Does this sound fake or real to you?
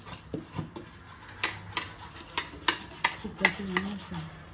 real